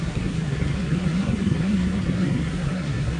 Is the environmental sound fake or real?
fake